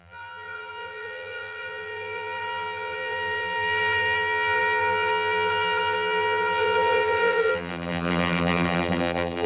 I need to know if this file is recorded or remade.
remade